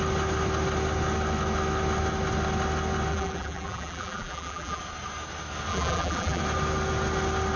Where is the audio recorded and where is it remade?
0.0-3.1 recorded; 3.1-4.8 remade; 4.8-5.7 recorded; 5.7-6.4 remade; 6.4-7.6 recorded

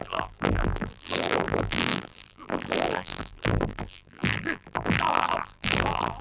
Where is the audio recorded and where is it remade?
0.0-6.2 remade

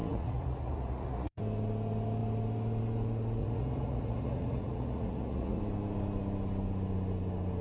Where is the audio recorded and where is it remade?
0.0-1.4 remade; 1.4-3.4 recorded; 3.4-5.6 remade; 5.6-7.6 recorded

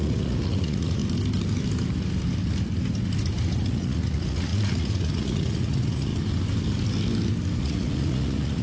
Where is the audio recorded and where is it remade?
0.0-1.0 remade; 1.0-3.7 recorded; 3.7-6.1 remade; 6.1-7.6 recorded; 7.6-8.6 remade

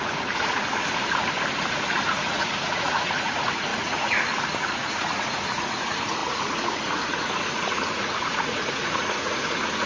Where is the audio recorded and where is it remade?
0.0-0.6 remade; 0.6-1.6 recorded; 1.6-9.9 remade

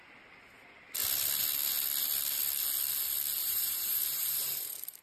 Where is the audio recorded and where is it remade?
0.0-3.4 recorded; 3.4-5.0 remade

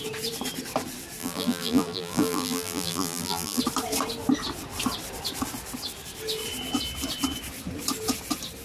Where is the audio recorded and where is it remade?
0.0-1.2 recorded; 1.2-3.6 remade; 3.6-8.6 recorded

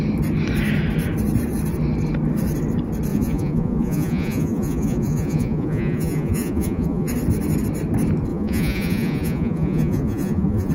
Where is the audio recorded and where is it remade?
0.0-3.1 recorded; 3.1-7.1 remade; 7.1-8.3 recorded; 8.3-10.7 remade